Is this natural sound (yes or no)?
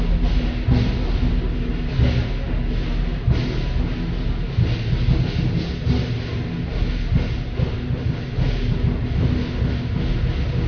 yes